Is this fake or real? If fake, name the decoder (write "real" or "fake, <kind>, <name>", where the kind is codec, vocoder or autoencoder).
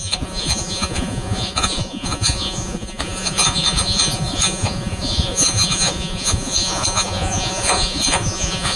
fake, vocoder, Vocos